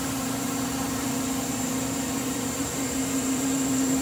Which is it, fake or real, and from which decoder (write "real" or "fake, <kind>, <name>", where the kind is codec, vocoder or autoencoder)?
fake, vocoder, BigVGAN v2